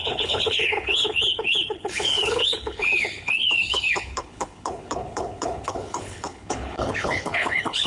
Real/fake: fake